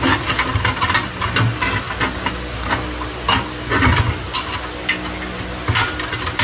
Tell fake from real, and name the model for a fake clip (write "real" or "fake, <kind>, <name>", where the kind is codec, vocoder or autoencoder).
real